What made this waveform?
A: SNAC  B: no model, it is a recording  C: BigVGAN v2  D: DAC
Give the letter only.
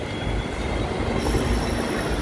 B